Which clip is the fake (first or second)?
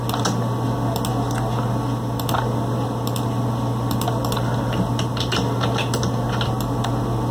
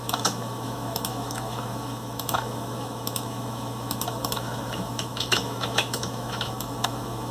second